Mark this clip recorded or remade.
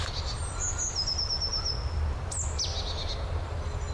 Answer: recorded